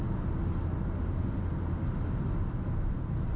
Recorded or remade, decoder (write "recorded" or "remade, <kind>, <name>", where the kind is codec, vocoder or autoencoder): recorded